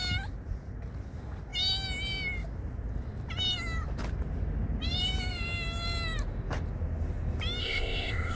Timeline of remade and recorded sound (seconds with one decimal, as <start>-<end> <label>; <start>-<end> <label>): 0.0-7.6 recorded; 7.6-8.4 remade